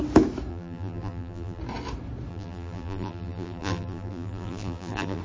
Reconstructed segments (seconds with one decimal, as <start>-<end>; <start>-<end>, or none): 0.5-1.6; 2.3-5.2